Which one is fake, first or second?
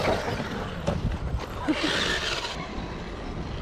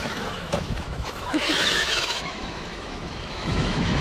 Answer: second